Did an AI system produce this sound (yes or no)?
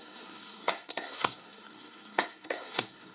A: yes